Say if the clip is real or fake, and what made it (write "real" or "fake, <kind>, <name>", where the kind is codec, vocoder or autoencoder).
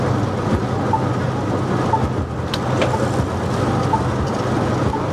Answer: real